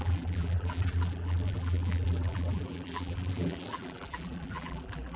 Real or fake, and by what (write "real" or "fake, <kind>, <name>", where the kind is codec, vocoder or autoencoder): fake, vocoder, BigVGAN v2